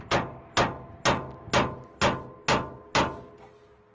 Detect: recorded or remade recorded